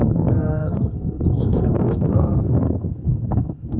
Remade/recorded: remade